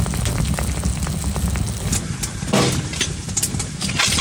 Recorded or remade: recorded